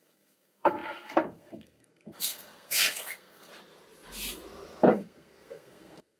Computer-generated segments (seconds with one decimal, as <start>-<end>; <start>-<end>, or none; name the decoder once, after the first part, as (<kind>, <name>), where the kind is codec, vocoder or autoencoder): 0.0-3.5 (codec, SNAC); 4.9-6.2